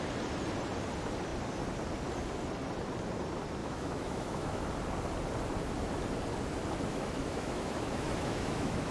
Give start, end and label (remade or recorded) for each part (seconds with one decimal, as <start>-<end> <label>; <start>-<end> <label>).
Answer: 0.0-3.6 recorded; 3.6-4.6 remade; 4.6-6.9 recorded; 6.9-8.9 remade